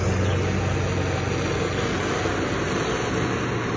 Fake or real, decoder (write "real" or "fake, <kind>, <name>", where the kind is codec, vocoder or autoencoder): real